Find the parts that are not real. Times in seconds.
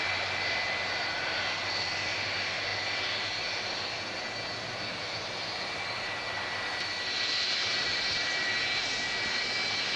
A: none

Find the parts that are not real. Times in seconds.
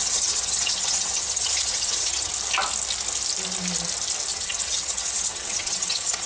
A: 0.0-2.3 (vocoder, WaveNeXt); 4.3-6.3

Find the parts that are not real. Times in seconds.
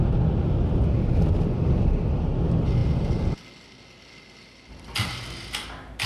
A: none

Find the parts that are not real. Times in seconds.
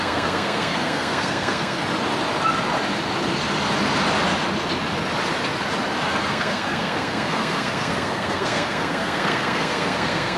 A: 0.0-1.8 (codec, SNAC); 6.3-10.4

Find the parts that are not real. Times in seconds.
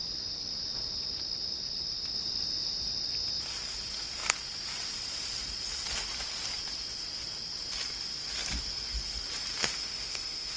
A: 9.6-10.6 (autoencoder, DAC-VAE)